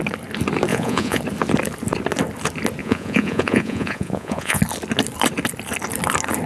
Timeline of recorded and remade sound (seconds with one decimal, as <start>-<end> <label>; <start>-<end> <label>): 0.0-0.7 recorded; 0.7-1.2 remade; 1.2-2.8 recorded; 2.8-4.6 remade; 4.6-6.5 recorded